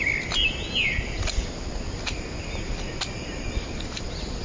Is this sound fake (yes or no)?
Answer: no